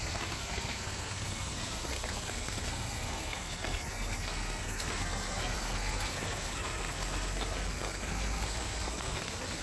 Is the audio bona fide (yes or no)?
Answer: no